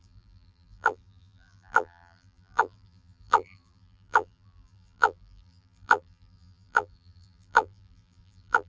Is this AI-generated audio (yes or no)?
yes